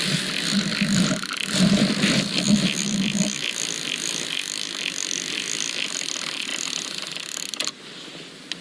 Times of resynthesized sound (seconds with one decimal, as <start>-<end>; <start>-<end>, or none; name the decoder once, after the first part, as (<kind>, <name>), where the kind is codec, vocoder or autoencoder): none